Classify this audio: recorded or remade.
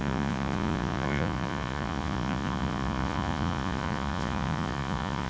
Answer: remade